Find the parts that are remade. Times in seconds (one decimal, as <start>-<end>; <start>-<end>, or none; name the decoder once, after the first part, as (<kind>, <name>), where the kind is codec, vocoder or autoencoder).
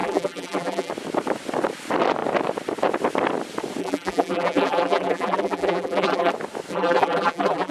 0.0-0.9 (vocoder, BigVGAN v2); 3.8-6.3; 6.7-7.7